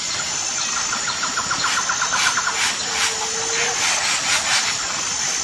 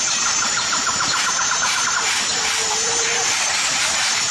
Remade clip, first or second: second